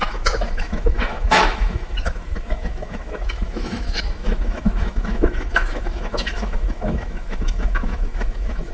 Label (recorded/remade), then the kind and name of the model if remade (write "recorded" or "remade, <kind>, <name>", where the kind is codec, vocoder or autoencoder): remade, autoencoder, DAC-VAE